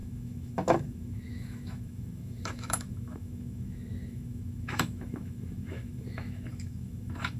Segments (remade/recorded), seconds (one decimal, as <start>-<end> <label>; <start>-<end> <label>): 0.0-7.4 remade